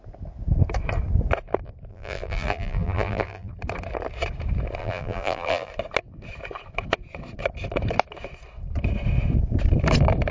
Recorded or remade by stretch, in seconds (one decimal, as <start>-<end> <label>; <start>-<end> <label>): 0.0-1.9 recorded; 1.9-3.5 remade; 3.5-4.8 recorded; 4.8-5.7 remade; 5.7-10.3 recorded